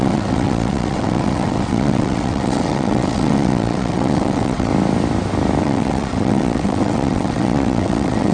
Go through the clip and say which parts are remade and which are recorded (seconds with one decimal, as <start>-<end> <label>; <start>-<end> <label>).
0.0-4.7 remade; 4.7-5.6 recorded; 5.6-8.3 remade